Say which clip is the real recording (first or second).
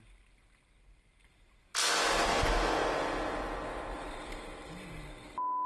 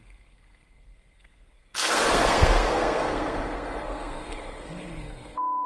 first